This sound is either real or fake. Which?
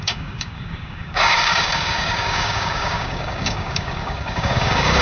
fake